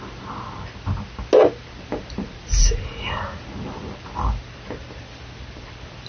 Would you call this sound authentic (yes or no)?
yes